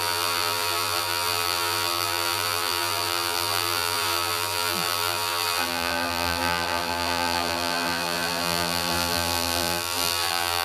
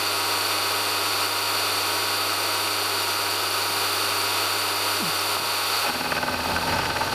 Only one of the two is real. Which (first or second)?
second